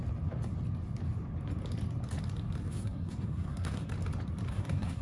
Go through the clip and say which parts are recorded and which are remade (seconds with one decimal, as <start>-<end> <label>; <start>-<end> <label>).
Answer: 0.0-2.7 recorded; 2.7-3.9 remade; 3.9-4.5 recorded; 4.5-5.0 remade